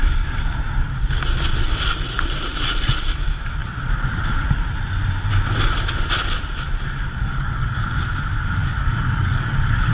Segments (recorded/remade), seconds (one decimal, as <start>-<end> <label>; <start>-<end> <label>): 0.0-7.1 recorded; 7.1-7.8 remade; 7.8-8.6 recorded; 8.6-9.9 remade